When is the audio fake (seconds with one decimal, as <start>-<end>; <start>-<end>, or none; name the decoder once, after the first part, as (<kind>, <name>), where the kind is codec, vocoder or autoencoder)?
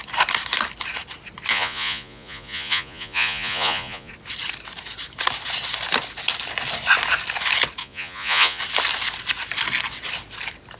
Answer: 1.5-4.1 (vocoder, Vocos); 7.8-8.6